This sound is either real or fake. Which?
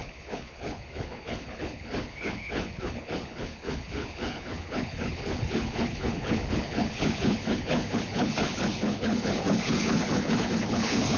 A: fake